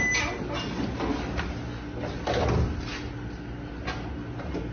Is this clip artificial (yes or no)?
no